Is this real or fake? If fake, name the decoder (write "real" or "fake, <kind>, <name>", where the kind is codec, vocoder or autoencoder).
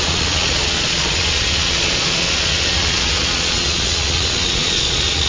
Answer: fake, vocoder, Vocos